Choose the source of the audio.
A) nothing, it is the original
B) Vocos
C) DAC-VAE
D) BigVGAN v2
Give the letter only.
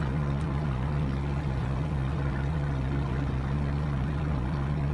B